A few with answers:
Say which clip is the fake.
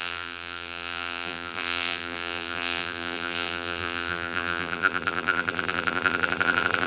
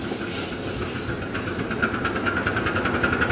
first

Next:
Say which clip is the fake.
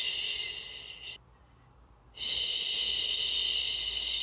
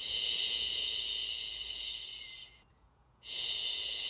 second